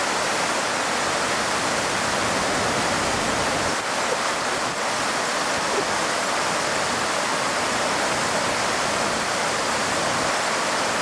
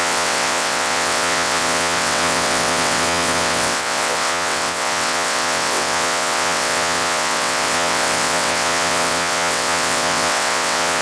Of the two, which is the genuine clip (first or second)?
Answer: first